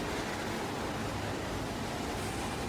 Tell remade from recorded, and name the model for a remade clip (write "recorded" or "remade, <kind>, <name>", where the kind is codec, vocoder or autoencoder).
recorded